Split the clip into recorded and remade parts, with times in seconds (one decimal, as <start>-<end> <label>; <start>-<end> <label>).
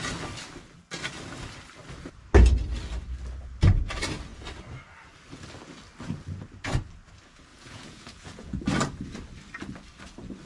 0.0-7.5 recorded; 7.5-8.6 remade; 8.6-10.5 recorded